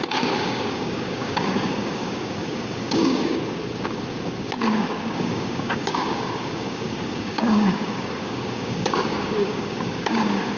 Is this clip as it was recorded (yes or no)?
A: no